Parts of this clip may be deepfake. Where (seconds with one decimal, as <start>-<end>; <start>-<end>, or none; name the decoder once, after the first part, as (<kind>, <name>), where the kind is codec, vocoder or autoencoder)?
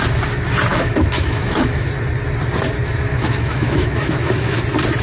0.7-1.9 (autoencoder, DAC-VAE); 3.1-4.6